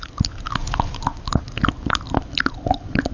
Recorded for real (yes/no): yes